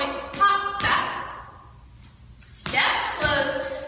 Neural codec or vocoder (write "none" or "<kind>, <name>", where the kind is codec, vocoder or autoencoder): none